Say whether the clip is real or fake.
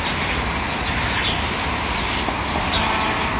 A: real